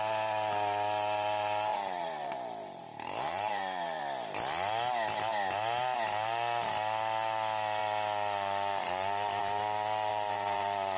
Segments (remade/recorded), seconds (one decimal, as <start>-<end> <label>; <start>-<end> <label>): 0.0-1.7 recorded; 1.7-4.0 remade; 4.0-10.1 recorded; 10.1-11.0 remade